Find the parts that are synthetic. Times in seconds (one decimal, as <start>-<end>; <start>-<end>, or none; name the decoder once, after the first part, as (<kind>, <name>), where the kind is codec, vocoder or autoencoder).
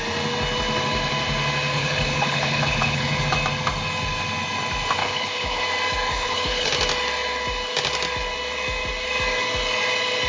1.7-3.2 (codec, HILCodec); 5.0-5.6; 6.1-6.7